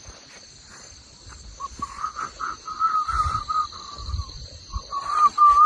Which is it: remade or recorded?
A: recorded